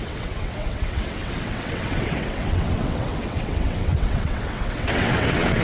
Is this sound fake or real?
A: fake